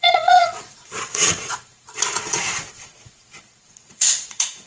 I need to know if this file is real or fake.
fake